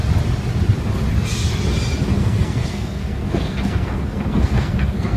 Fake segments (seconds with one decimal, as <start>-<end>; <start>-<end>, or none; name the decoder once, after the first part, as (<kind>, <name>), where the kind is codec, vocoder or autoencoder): 2.1-5.2 (codec, SNAC)